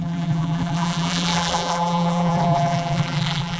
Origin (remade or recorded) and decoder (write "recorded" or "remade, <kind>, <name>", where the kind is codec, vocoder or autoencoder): remade, vocoder, BigVGAN v2